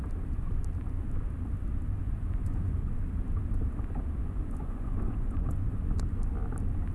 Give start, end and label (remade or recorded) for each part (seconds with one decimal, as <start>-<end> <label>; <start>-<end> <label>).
0.0-2.0 recorded; 2.0-2.9 remade; 2.9-4.2 recorded; 4.2-6.0 remade; 6.0-6.9 recorded